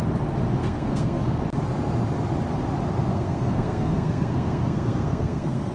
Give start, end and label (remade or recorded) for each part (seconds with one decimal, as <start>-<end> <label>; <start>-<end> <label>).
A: 0.0-0.6 recorded; 0.6-1.4 remade; 1.4-3.1 recorded; 3.1-5.7 remade